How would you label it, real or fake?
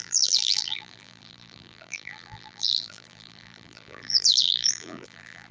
fake